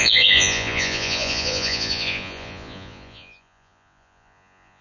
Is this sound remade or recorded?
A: remade